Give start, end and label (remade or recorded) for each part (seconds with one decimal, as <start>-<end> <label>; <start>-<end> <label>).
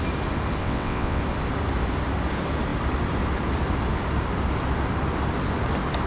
0.0-0.6 recorded; 0.6-1.2 remade; 1.2-6.1 recorded